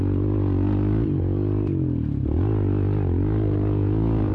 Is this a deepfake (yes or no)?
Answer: no